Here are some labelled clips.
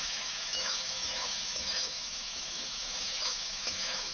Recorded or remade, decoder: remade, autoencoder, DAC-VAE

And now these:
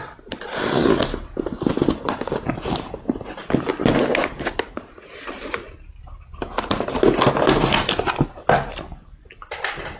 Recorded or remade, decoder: recorded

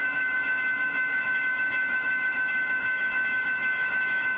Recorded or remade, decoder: remade, autoencoder, DAC-VAE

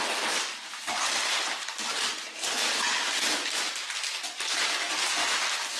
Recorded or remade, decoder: recorded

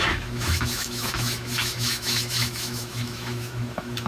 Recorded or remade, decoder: remade, autoencoder, DAC-VAE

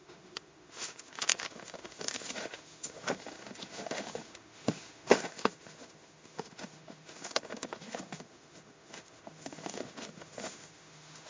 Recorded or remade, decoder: remade, autoencoder, DAC-VAE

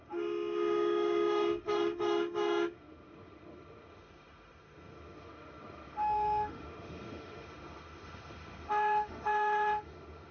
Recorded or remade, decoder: remade, autoencoder, DAC-VAE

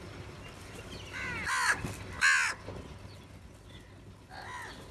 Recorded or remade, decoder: recorded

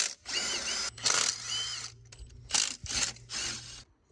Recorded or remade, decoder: recorded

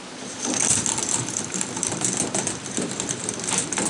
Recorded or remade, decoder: recorded